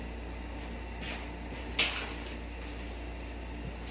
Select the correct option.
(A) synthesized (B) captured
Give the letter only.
B